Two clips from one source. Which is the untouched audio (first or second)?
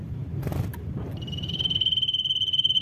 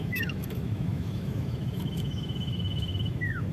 first